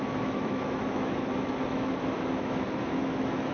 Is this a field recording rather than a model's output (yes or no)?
no